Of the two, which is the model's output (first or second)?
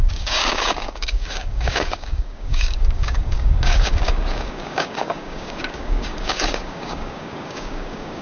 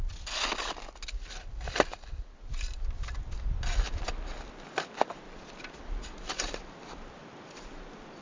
first